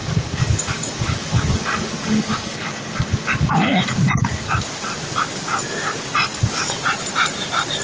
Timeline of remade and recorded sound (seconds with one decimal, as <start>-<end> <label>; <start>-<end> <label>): 0.0-3.8 remade; 3.8-7.8 recorded